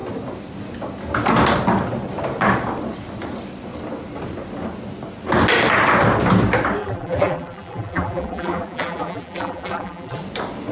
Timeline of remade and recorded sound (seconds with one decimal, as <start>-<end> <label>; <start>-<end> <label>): 0.0-6.8 recorded; 6.8-10.2 remade; 10.2-10.7 recorded

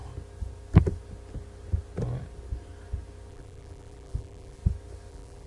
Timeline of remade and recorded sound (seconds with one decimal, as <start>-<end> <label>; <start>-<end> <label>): 0.0-3.3 recorded; 3.3-4.6 remade; 4.6-5.1 recorded; 5.1-5.5 remade

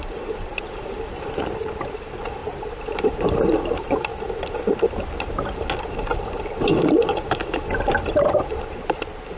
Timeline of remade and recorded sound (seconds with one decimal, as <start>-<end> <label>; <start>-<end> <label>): 0.0-4.1 remade; 4.1-5.8 recorded; 5.8-9.4 remade

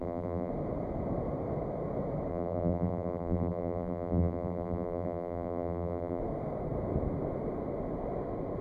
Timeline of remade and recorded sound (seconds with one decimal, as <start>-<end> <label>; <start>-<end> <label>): 0.0-0.5 remade; 0.5-2.3 recorded; 2.3-6.2 remade; 6.2-8.6 recorded

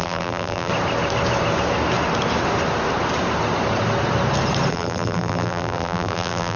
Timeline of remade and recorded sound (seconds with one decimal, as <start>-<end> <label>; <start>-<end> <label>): 0.0-0.7 remade; 0.7-4.7 recorded; 4.7-6.6 remade

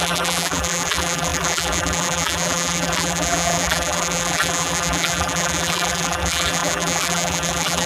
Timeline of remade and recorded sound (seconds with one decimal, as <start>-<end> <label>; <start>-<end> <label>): 0.0-7.9 remade

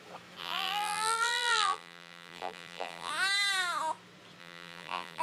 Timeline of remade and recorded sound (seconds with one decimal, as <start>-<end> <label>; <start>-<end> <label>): 0.0-0.4 recorded; 0.4-3.1 remade; 3.1-4.4 recorded; 4.4-5.2 remade

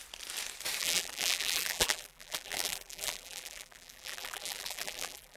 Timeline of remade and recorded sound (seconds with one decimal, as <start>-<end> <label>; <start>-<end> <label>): 0.0-0.8 recorded; 0.8-5.4 remade